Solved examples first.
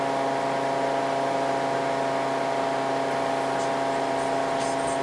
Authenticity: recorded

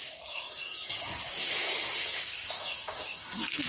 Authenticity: remade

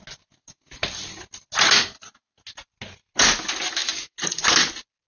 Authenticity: recorded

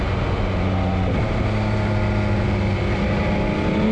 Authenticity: recorded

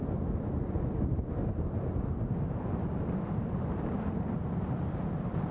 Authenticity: recorded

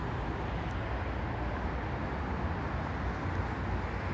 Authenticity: recorded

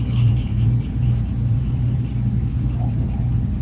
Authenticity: remade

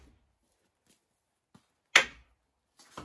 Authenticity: recorded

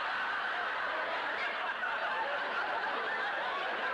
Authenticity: recorded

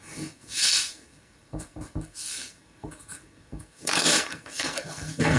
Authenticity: remade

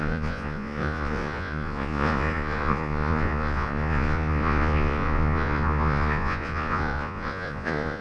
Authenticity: remade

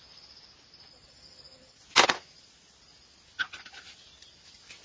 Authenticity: recorded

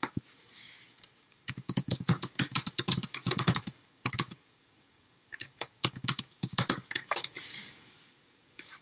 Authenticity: remade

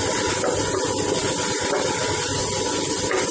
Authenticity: recorded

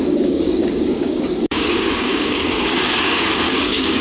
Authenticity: remade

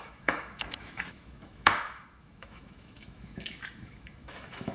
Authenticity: remade